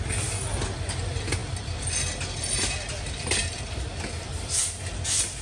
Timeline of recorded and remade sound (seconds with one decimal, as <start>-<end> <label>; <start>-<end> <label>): 0.0-5.4 recorded